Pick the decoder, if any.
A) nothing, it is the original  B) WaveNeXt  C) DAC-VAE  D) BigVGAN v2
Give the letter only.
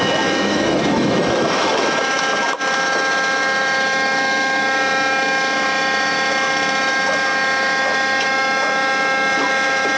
C